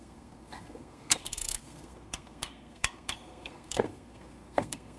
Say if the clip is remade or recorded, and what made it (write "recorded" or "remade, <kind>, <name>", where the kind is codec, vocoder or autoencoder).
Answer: remade, codec, SNAC